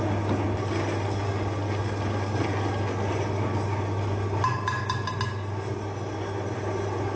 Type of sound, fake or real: real